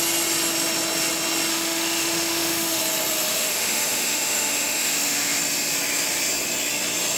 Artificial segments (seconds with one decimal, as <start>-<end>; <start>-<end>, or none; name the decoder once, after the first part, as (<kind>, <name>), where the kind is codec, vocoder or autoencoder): 1.5-2.8 (autoencoder, DAC-VAE); 3.3-5.4